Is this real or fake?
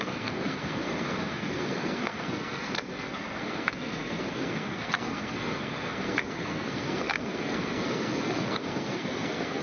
fake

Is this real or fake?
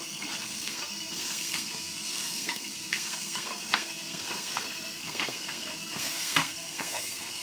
fake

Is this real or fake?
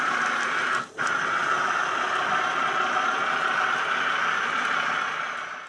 real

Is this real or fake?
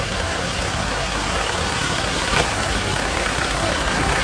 fake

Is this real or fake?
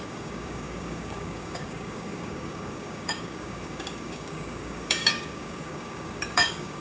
fake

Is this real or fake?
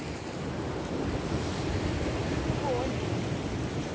real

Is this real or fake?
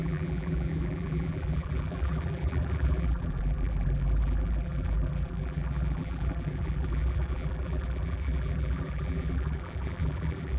fake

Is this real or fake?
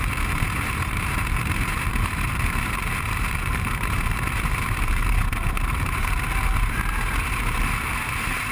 fake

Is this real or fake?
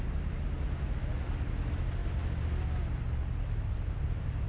real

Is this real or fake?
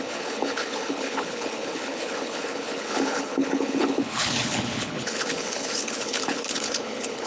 fake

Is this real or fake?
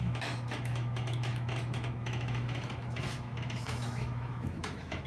fake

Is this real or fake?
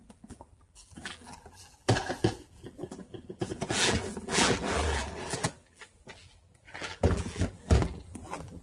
fake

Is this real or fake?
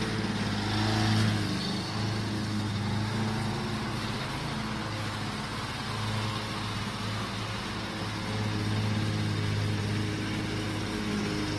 real